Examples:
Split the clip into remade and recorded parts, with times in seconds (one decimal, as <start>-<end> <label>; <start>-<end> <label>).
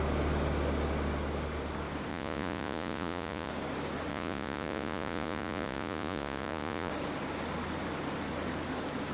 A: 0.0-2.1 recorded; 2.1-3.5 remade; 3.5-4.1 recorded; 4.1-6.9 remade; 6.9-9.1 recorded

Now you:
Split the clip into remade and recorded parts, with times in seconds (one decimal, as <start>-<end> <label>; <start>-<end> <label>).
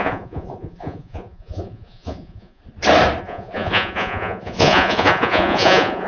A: 0.0-2.6 remade; 2.6-3.2 recorded; 3.2-6.1 remade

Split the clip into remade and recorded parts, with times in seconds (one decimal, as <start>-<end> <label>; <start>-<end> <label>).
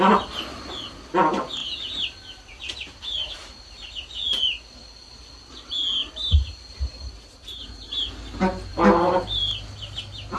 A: 0.0-1.6 recorded; 1.6-3.9 remade; 3.9-6.0 recorded; 6.0-8.0 remade; 8.0-8.7 recorded; 8.7-9.4 remade; 9.4-10.4 recorded